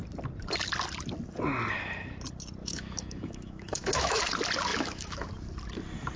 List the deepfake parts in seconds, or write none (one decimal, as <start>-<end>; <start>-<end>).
2.6-4.2; 4.7-5.3